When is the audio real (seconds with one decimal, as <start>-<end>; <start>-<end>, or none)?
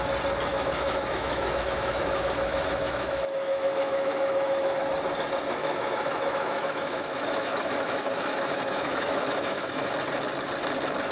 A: 0.0-0.5; 4.8-5.6; 9.9-11.1